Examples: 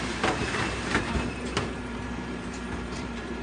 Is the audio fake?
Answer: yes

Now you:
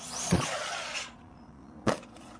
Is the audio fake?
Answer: yes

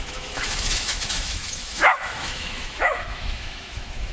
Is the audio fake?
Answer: yes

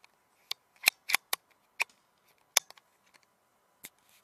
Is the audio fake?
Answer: no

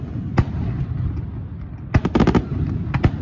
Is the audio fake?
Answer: no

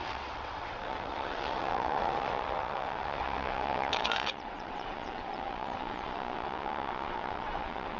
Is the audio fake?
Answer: yes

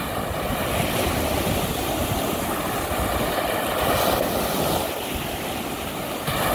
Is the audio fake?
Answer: no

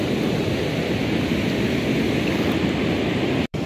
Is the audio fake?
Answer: yes